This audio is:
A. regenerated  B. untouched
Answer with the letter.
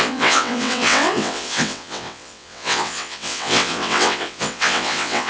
A